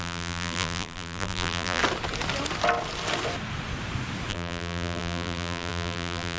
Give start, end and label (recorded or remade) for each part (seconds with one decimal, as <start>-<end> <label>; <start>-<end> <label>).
0.0-1.8 remade; 1.8-4.3 recorded; 4.3-6.4 remade